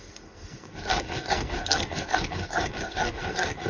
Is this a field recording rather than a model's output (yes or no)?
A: no